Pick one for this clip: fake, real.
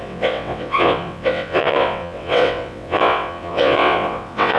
fake